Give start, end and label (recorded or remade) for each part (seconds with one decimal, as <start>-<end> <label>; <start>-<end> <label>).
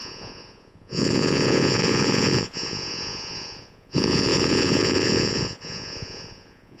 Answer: 0.0-6.8 remade